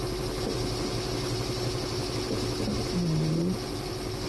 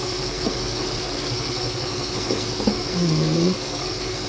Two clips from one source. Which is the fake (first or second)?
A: second